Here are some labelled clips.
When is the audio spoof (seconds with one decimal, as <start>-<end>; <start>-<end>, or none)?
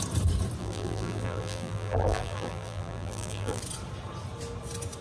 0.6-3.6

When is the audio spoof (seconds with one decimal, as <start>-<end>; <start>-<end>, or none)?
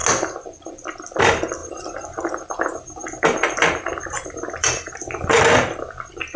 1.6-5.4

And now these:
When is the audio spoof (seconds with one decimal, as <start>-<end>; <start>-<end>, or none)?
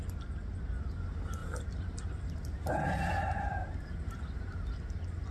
1.4-4.2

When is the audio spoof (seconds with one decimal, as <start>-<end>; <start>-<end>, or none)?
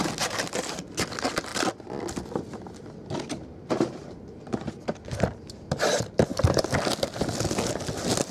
none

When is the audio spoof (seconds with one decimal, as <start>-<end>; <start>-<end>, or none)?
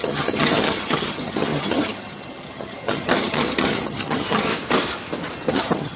0.0-4.5; 5.5-6.0